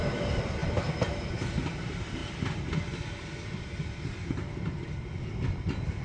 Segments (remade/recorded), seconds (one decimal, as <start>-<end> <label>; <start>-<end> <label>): 0.0-6.0 recorded